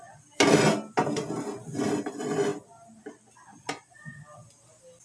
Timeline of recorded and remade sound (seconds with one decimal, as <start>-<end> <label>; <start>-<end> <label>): 0.0-5.0 recorded